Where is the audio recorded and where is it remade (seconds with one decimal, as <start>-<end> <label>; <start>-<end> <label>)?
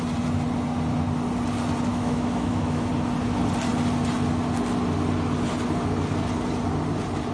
0.0-1.9 recorded; 1.9-2.9 remade; 2.9-7.3 recorded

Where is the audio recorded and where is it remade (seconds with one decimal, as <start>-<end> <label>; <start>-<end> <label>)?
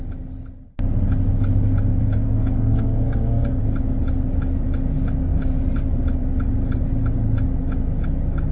0.0-1.9 recorded; 1.9-3.6 remade; 3.6-8.5 recorded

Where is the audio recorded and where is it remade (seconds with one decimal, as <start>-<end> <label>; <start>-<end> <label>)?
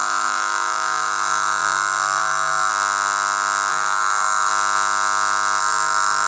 0.0-2.7 remade; 2.7-3.7 recorded; 3.7-4.5 remade; 4.5-5.6 recorded; 5.6-6.3 remade